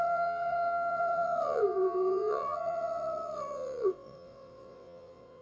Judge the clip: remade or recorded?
remade